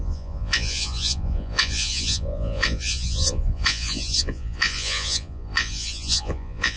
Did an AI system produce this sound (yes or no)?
yes